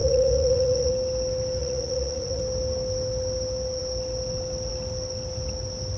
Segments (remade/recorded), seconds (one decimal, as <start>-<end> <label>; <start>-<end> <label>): 0.0-0.9 remade; 0.9-1.6 recorded; 1.6-2.4 remade; 2.4-6.0 recorded